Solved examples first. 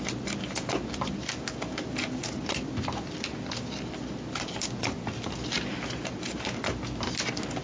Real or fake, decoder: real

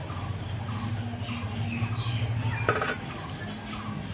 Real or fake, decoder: real